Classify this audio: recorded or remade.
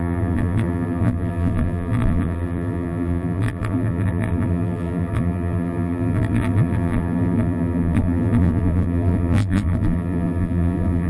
remade